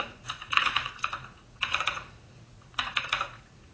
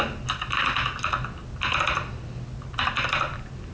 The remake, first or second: first